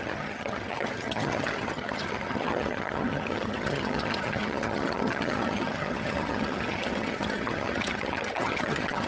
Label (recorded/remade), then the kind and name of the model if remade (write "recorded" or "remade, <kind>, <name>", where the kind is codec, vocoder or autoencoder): remade, vocoder, HiFi-GAN